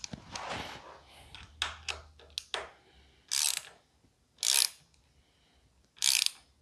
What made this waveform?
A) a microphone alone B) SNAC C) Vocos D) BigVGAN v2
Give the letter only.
A